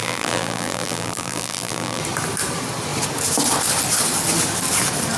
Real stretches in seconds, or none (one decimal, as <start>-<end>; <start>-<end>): 2.0-5.2